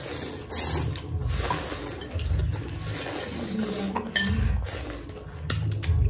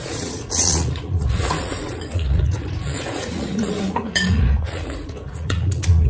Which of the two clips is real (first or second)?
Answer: first